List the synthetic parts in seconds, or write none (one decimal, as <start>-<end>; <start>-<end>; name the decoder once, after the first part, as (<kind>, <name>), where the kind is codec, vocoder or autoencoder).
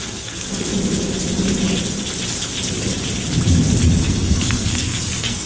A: 0.0-0.7 (codec, SNAC); 4.0-5.5